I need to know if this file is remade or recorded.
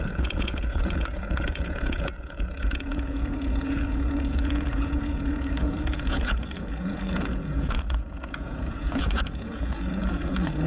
remade